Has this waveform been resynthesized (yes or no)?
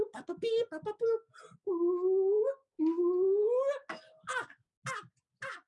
no